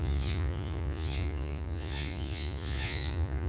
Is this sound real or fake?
fake